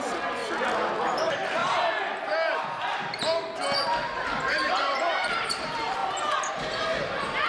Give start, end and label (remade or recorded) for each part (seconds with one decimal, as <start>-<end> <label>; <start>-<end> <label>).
0.0-0.4 remade; 0.4-1.0 recorded; 1.0-1.6 remade; 1.6-4.8 recorded; 4.8-6.0 remade; 6.0-6.5 recorded; 6.5-7.5 remade

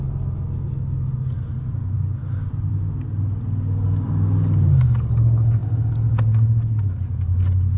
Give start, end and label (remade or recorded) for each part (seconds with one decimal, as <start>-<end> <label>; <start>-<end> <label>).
0.0-7.8 recorded

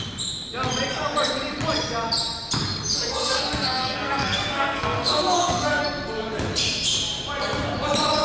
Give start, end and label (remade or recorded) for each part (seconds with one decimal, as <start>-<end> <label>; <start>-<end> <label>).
0.0-3.1 recorded; 3.1-5.8 remade; 5.8-8.2 recorded

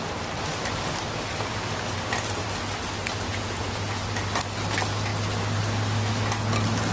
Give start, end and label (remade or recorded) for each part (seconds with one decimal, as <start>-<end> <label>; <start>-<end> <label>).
0.0-3.3 recorded; 3.3-4.0 remade; 4.0-6.9 recorded

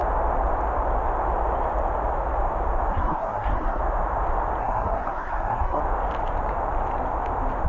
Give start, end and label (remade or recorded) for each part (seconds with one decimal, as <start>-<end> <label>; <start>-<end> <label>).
0.0-2.9 recorded; 2.9-3.8 remade; 3.8-4.6 recorded; 4.6-5.8 remade; 5.8-7.7 recorded

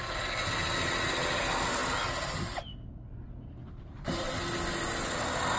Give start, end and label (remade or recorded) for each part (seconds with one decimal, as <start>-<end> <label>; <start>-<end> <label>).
0.0-5.6 recorded

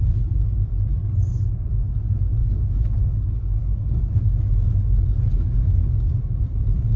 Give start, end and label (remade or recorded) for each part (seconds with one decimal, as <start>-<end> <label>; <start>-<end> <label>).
0.0-2.4 recorded; 2.4-4.0 remade; 4.0-5.3 recorded; 5.3-6.4 remade; 6.4-7.0 recorded

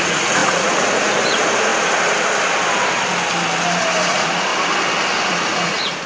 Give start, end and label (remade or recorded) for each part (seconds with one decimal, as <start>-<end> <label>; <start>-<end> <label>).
0.0-1.7 remade; 1.7-4.1 recorded; 4.1-4.5 remade; 4.5-5.3 recorded; 5.3-6.1 remade